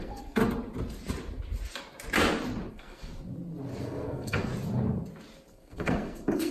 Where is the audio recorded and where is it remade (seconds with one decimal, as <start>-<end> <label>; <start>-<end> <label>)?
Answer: 0.0-0.4 remade; 0.4-2.7 recorded; 2.7-3.1 remade; 3.1-3.8 recorded; 3.8-4.5 remade; 4.5-5.5 recorded; 5.5-6.5 remade